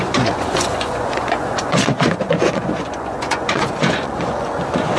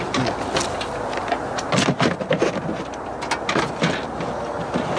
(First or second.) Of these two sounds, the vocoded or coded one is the first